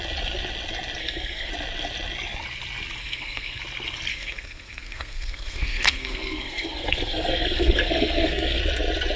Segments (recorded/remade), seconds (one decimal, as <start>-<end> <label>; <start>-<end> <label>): 0.0-1.0 recorded; 1.0-1.5 remade; 1.5-3.0 recorded; 3.0-3.6 remade; 3.6-4.1 recorded; 4.1-8.6 remade; 8.6-9.2 recorded